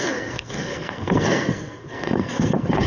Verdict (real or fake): fake